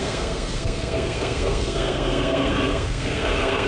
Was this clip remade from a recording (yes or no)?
yes